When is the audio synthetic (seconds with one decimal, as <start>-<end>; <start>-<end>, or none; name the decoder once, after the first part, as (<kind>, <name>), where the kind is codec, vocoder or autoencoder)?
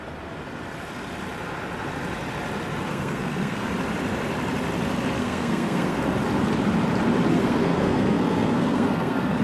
2.9-3.7 (codec, SNAC); 5.2-6.0; 7.3-9.4